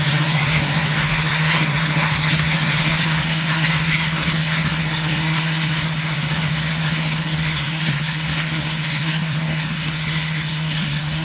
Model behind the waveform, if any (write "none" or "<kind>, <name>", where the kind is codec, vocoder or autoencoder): codec, SNAC